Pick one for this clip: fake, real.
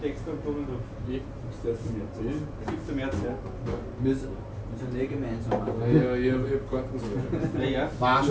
real